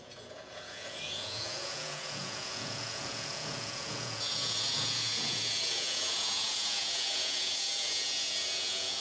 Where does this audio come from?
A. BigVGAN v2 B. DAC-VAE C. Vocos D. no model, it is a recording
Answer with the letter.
C